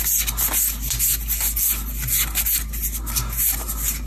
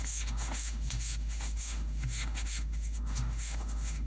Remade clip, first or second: second